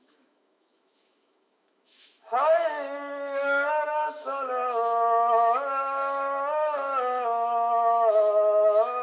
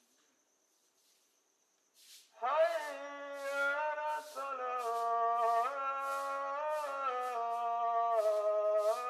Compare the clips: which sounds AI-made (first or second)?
first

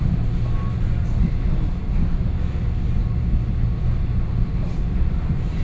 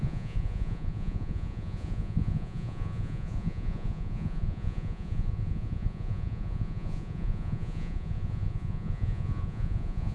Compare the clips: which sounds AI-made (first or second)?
second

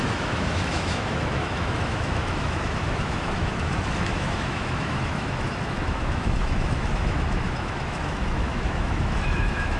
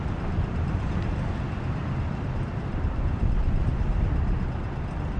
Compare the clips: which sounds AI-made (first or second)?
first